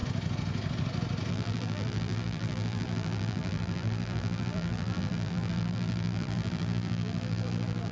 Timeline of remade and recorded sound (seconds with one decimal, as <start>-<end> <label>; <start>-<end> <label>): 0.0-1.3 recorded; 1.3-7.9 remade